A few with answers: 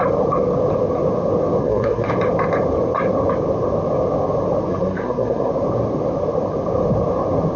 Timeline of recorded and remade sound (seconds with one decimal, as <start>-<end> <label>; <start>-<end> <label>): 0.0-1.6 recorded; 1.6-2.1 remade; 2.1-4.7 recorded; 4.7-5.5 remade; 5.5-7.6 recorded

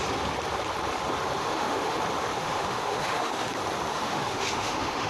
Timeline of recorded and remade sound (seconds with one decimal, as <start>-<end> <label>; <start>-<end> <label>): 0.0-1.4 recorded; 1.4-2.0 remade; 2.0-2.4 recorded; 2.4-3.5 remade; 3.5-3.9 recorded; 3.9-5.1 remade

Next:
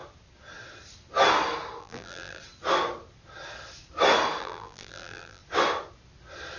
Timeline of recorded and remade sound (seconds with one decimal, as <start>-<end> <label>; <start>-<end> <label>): 0.0-1.8 recorded; 1.8-2.4 remade; 2.4-4.4 recorded; 4.4-5.4 remade; 5.4-6.6 recorded